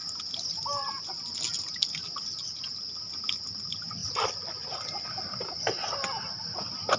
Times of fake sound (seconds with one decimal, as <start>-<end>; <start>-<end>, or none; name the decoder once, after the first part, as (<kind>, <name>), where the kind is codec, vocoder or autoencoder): 4.0-5.1 (vocoder, BigVGAN v2)